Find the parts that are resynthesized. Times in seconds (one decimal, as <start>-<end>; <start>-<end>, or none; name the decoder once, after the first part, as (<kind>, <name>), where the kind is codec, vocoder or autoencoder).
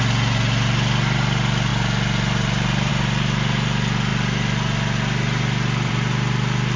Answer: none